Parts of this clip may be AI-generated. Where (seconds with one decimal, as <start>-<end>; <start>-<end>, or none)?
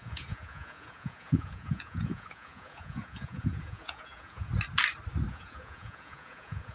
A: 0.0-4.5; 5.3-6.7